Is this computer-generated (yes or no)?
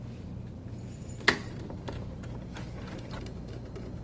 no